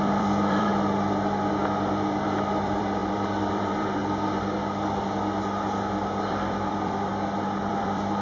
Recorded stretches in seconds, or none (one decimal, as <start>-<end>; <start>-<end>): 0.7-2.6; 4.0-6.2; 7.1-7.6